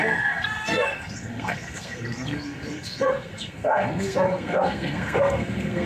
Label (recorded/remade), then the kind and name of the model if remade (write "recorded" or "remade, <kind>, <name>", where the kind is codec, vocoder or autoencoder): remade, codec, SNAC